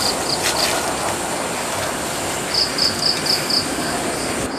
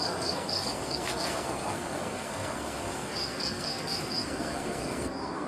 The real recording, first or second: first